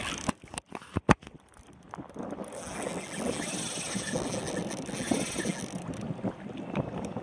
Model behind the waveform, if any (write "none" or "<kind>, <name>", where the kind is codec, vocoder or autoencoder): none